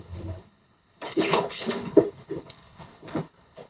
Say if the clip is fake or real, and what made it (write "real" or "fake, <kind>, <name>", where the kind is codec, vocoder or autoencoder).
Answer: fake, codec, HILCodec